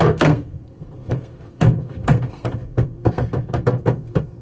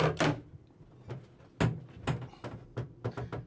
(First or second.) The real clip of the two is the second